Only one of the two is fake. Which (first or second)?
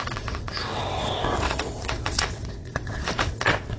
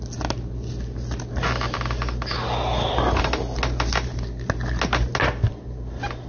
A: first